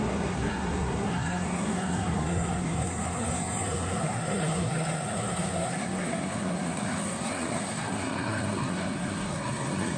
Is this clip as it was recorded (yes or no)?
no